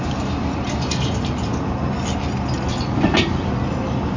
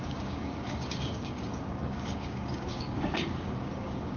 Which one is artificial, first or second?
second